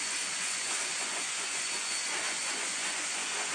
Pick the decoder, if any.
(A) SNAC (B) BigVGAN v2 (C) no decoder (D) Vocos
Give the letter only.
D